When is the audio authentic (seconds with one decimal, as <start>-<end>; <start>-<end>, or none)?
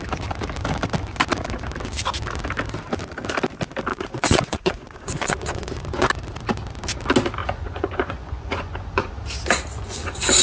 0.0-3.9; 6.1-7.4; 9.1-9.7